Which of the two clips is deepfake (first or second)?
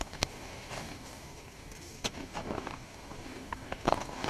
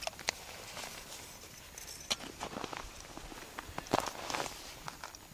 first